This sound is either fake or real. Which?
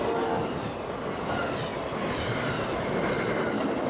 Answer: real